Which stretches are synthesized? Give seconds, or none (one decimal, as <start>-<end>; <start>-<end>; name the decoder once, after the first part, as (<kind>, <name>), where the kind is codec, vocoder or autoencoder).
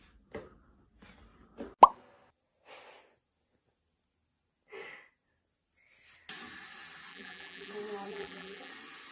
7.1-7.7 (vocoder, BigVGAN v2); 8.1-8.7